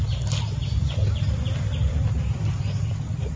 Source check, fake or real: real